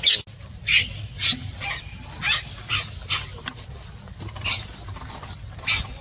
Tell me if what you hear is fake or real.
real